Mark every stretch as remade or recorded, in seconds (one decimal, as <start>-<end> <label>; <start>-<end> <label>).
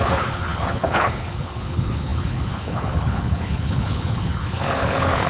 0.0-5.3 remade